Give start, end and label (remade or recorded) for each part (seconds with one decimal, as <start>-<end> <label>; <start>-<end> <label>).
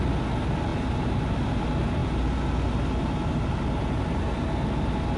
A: 0.0-5.2 recorded